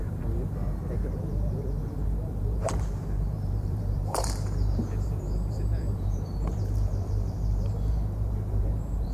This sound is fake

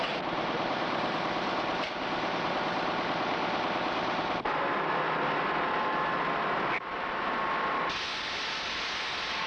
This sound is real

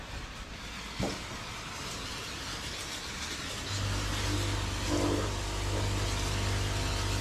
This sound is real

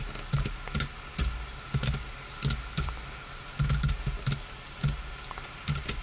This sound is real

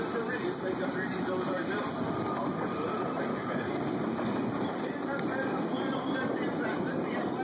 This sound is fake